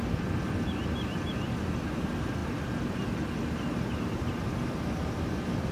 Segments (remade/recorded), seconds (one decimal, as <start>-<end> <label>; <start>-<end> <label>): 0.0-5.7 recorded